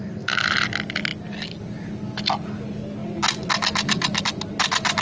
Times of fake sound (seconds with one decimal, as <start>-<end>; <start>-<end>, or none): none